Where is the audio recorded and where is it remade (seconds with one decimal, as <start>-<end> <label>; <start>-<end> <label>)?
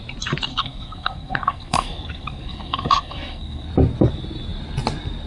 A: 0.0-0.5 recorded; 0.5-3.7 remade; 3.7-5.3 recorded